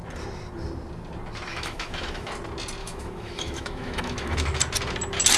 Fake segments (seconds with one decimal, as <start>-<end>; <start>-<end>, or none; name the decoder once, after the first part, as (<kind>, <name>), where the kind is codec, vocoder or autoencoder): 1.5-2.3 (autoencoder, DAC-VAE); 2.8-4.6